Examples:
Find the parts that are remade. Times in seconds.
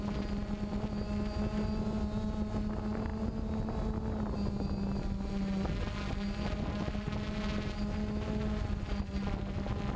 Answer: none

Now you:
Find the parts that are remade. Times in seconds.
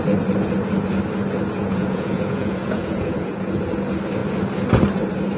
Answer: 1.6-3.6 (vocoder, Vocos)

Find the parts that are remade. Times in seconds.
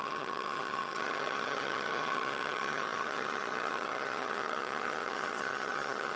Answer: 0.0-6.2 (vocoder, HiFi-GAN)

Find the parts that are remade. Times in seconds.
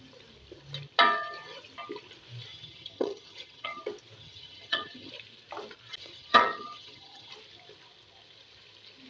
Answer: 2.5-3.8 (vocoder, HiFi-GAN); 4.2-5.1; 6.0-7.3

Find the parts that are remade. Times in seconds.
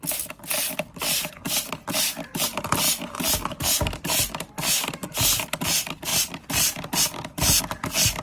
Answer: 0.6-4.4 (vocoder, BigVGAN v2); 6.1-7.6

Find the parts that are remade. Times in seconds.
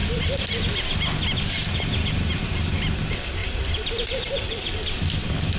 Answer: 3.4-4.6 (vocoder, BigVGAN v2)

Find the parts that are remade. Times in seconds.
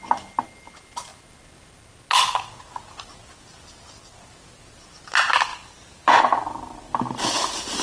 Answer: 5.5-6.2 (vocoder, BigVGAN v2)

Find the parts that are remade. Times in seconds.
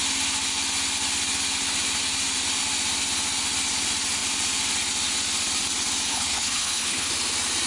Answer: 6.1-7.1 (codec, HILCodec)